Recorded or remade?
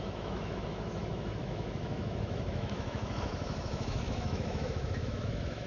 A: remade